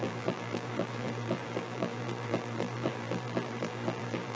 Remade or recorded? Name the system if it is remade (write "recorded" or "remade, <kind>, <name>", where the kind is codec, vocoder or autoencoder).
remade, vocoder, BigVGAN v2